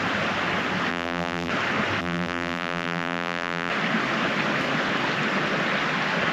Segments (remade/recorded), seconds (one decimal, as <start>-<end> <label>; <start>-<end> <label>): 0.0-0.9 recorded; 0.9-1.5 remade; 1.5-2.0 recorded; 2.0-3.7 remade; 3.7-6.3 recorded